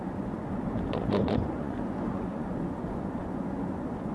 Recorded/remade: remade